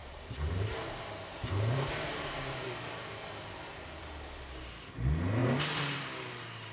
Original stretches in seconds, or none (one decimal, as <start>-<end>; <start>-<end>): 4.0-6.7